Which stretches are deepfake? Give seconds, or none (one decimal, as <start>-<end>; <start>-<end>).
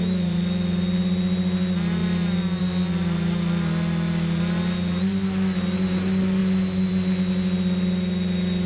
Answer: none